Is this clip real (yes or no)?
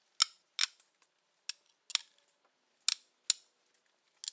yes